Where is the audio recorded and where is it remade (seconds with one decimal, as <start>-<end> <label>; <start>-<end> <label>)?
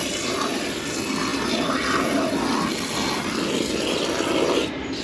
0.0-5.0 recorded